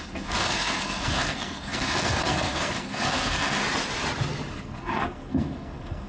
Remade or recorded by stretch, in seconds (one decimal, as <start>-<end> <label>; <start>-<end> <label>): 0.0-3.6 remade; 3.6-4.5 recorded; 4.5-6.1 remade